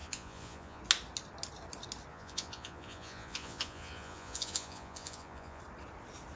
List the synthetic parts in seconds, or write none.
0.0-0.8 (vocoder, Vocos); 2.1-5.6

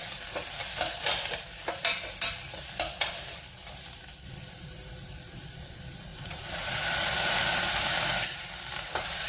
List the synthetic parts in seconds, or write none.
6.1-6.7 (vocoder, Vocos)